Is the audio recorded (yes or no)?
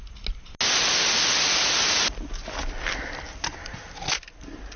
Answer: yes